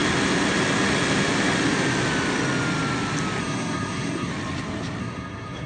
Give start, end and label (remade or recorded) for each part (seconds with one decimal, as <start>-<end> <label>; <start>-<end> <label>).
0.0-3.4 recorded; 3.4-4.3 remade; 4.3-5.0 recorded; 5.0-5.7 remade